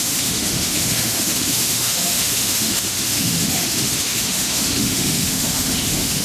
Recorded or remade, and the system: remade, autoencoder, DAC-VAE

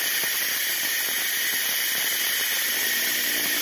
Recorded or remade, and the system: recorded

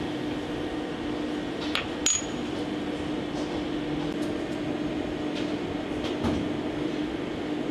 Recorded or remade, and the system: recorded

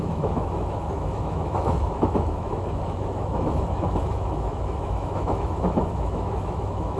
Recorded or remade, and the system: remade, autoencoder, DAC-VAE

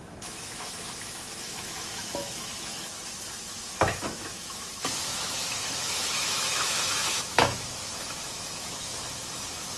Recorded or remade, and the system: remade, autoencoder, DAC-VAE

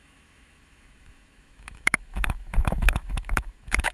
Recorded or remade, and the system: remade, autoencoder, DAC-VAE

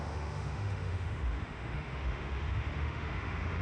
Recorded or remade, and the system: remade, autoencoder, DAC-VAE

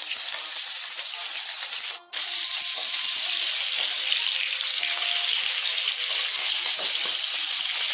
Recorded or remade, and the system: recorded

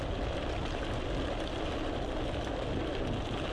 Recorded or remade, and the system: recorded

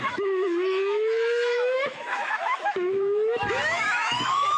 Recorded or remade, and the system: remade, autoencoder, DAC-VAE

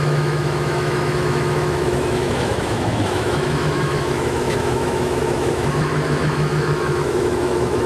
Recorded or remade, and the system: remade, autoencoder, DAC-VAE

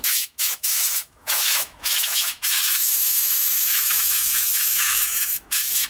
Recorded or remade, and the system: remade, autoencoder, DAC-VAE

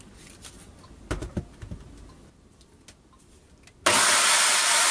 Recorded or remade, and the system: recorded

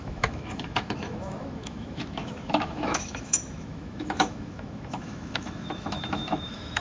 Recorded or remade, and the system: remade, autoencoder, DAC-VAE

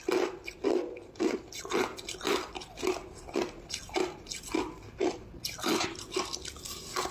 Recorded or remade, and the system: recorded